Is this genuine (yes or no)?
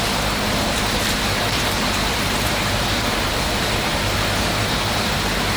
no